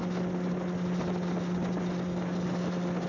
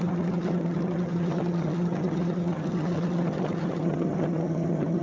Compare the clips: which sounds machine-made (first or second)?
second